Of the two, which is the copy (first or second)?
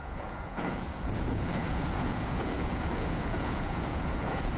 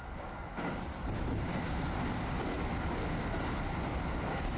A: first